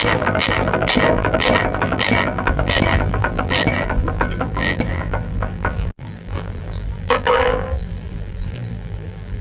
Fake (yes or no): yes